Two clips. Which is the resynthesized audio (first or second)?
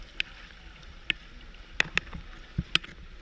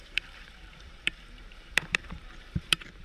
second